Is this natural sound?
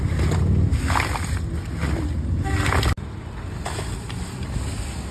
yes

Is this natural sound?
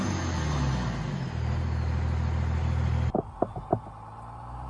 yes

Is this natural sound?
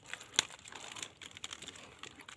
yes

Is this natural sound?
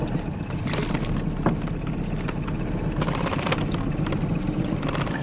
yes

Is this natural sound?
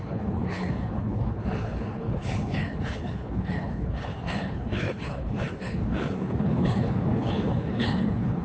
no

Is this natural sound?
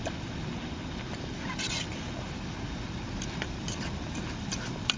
yes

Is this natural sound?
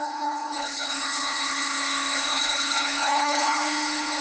no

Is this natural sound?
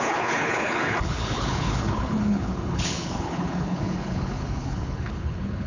no